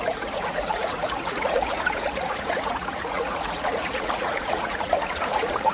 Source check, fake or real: fake